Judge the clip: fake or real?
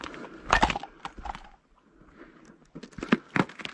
real